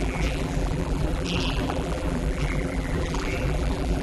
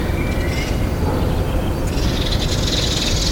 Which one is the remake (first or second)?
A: first